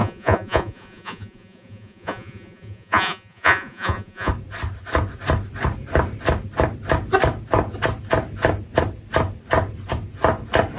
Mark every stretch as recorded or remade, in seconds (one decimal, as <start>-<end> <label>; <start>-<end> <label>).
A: 0.0-4.3 remade; 4.3-10.8 recorded